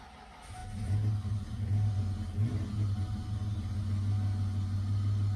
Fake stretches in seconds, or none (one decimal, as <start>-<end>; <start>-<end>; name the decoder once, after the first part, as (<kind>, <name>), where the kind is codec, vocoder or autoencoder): none